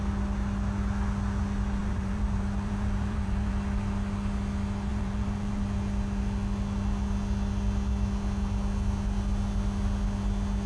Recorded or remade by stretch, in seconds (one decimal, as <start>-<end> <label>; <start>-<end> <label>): 0.0-1.8 recorded; 1.8-3.5 remade; 3.5-4.9 recorded; 4.9-5.6 remade; 5.6-10.7 recorded

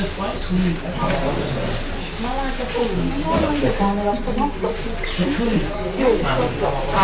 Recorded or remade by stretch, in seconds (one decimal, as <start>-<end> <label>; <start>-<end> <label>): 0.0-5.2 recorded; 5.2-6.2 remade; 6.2-7.0 recorded

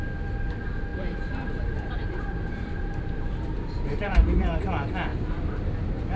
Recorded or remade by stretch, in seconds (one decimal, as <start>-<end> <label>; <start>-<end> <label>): 0.0-0.9 recorded; 0.9-4.6 remade; 4.6-6.2 recorded

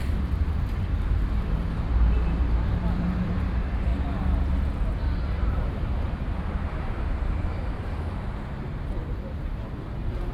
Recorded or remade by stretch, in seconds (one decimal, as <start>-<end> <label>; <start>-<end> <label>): 0.0-3.9 remade; 3.9-5.2 recorded; 5.2-10.3 remade